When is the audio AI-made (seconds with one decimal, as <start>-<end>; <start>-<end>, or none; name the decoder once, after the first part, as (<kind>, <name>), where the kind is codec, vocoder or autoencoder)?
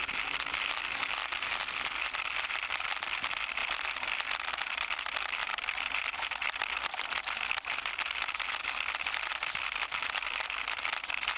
none